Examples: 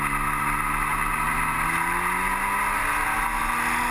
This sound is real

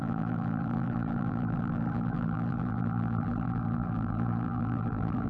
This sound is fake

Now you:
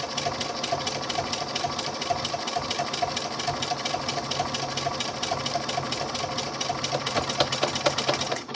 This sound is real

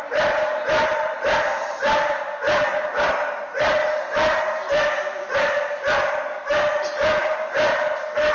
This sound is real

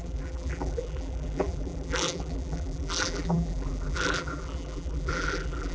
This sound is fake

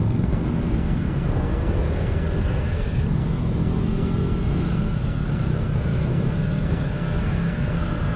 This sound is fake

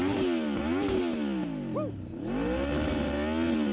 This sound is real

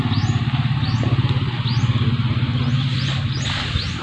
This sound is real